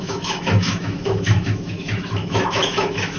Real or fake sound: fake